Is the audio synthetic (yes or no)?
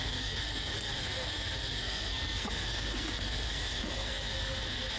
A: yes